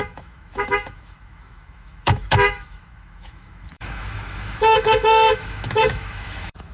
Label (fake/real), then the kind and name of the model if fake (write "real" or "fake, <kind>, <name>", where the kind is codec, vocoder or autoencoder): fake, autoencoder, DAC-VAE